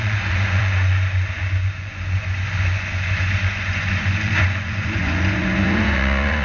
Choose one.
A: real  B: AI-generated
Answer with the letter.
B